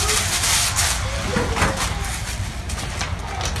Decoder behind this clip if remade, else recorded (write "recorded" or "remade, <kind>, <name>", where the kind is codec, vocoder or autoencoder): recorded